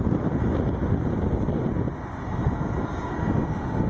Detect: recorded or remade recorded